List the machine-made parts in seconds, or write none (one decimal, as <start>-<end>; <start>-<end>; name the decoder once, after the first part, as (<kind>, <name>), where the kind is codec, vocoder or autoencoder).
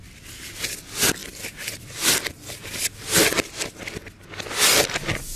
1.2-2.1 (vocoder, BigVGAN v2); 3.3-3.8